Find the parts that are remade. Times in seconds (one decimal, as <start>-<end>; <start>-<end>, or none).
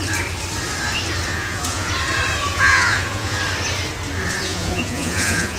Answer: 1.3-1.9; 2.5-3.4; 4.4-5.6